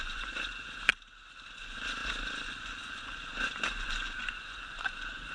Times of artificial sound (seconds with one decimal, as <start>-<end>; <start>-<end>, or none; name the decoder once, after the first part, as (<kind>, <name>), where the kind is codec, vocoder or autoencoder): 0.0-0.9 (vocoder, Vocos); 1.6-5.3